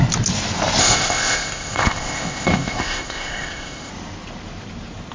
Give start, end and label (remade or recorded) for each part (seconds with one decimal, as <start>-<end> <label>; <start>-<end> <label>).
0.0-0.8 recorded; 0.8-3.9 remade; 3.9-5.1 recorded